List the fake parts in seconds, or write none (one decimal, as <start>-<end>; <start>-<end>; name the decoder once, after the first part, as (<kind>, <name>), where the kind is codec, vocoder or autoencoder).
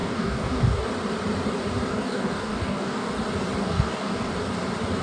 0.0-0.9 (codec, DAC); 1.9-3.1; 3.6-4.3